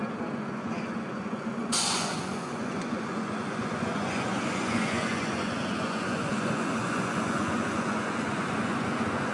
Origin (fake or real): fake